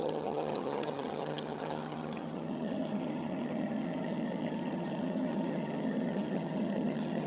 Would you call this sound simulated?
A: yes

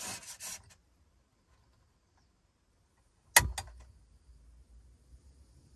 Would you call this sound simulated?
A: no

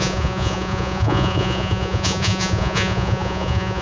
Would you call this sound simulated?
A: yes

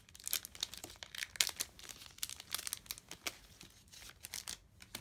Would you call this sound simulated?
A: no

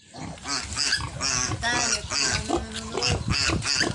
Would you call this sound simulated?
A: no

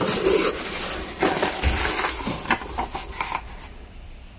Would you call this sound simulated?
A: no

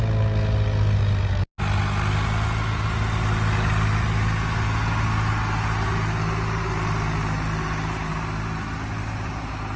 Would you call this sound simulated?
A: no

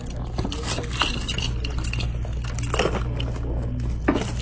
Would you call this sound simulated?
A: no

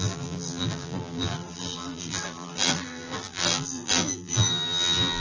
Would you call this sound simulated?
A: yes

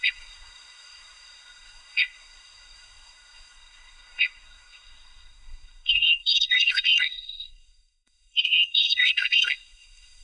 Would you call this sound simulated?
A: yes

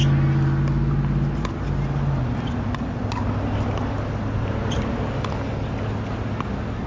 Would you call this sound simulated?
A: no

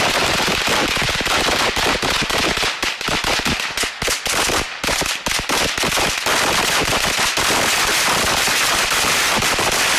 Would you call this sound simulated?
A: no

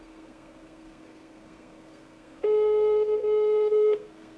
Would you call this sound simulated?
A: yes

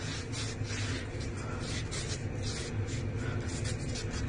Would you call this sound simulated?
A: no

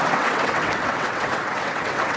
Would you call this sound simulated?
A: yes